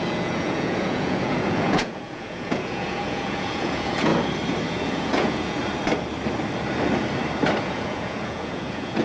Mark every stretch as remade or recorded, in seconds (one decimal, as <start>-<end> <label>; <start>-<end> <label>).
0.0-4.1 remade; 4.1-4.7 recorded; 4.7-5.6 remade; 5.6-7.6 recorded; 7.6-9.0 remade